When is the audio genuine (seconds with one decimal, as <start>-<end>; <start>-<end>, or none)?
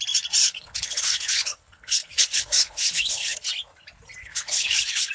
0.0-0.4; 3.5-4.2